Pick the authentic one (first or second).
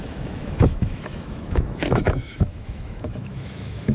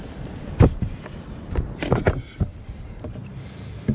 second